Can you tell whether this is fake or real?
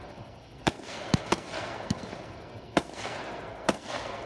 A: fake